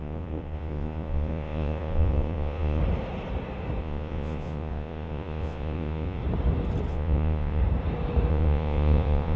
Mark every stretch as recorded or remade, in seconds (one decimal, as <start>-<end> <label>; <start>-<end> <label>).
0.0-2.8 remade; 2.8-3.8 recorded; 3.8-6.2 remade; 6.2-6.9 recorded; 6.9-7.6 remade; 7.6-8.3 recorded; 8.3-9.4 remade